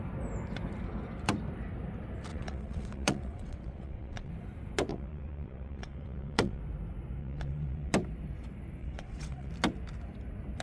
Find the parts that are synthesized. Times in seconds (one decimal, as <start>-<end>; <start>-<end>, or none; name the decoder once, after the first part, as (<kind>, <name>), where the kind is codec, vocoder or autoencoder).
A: 2.3-4.3 (vocoder, WaveNeXt); 4.9-6.6; 7.2-7.9; 8.8-9.5